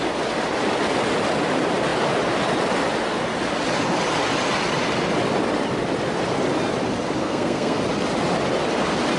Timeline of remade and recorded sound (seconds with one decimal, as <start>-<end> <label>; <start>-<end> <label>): 0.0-7.2 recorded; 7.2-7.8 remade; 7.8-9.2 recorded